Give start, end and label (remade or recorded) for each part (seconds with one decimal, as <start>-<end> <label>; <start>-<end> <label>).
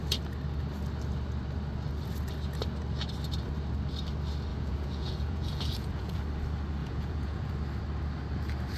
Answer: 0.0-4.5 recorded; 4.5-6.2 remade; 6.2-6.8 recorded; 6.8-7.5 remade; 7.5-8.8 recorded